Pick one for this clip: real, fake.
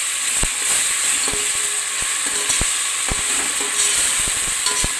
real